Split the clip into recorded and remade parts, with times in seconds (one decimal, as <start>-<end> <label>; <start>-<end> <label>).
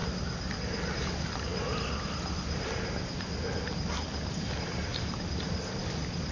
0.0-6.3 recorded